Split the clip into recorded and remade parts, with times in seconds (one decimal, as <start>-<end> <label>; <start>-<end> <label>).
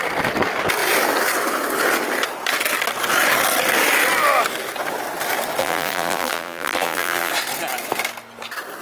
0.0-5.6 recorded; 5.6-7.3 remade; 7.3-8.8 recorded